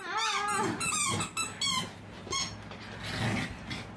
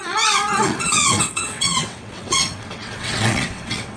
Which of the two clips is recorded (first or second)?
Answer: first